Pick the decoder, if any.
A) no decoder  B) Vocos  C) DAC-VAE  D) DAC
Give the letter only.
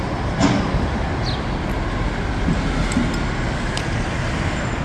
A